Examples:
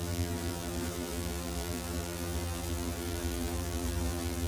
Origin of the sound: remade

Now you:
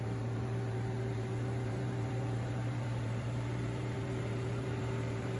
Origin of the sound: remade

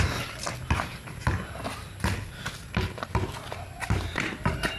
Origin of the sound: recorded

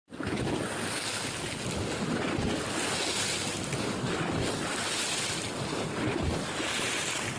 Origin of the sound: recorded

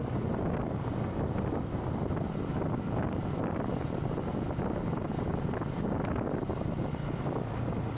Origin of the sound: recorded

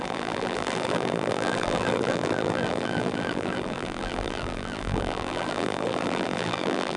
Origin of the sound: remade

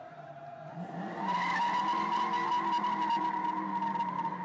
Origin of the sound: remade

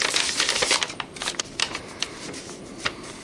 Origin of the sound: remade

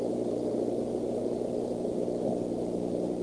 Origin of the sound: recorded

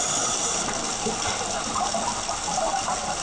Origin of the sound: recorded